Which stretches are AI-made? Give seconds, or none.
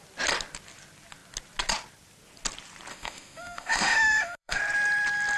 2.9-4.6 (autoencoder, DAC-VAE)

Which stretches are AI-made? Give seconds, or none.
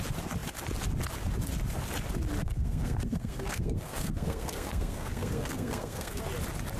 2.4-6.2 (codec, SNAC)